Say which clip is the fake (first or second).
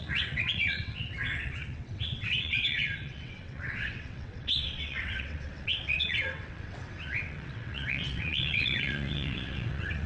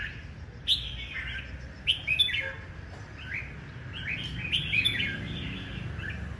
first